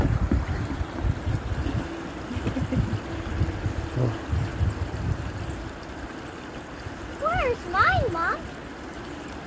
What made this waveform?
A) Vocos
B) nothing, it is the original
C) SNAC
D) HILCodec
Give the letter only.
B